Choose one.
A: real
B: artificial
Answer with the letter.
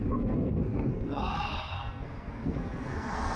B